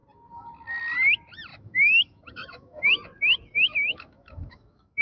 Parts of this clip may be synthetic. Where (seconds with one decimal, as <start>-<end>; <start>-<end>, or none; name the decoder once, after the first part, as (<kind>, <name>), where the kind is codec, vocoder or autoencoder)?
1.5-2.9 (autoencoder, DAC-VAE); 3.9-5.0